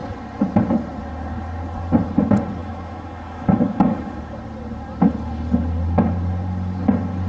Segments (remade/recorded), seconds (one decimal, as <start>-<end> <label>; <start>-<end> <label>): 0.0-2.6 recorded; 2.6-4.2 remade; 4.2-7.3 recorded